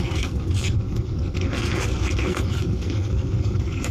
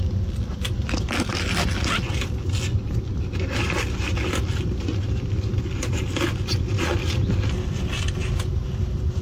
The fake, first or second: first